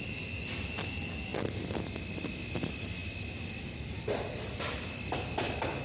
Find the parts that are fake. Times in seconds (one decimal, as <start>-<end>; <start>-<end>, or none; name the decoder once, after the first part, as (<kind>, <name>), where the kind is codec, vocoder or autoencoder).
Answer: none